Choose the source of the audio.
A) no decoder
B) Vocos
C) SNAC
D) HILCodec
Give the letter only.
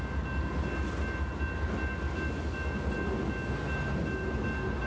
A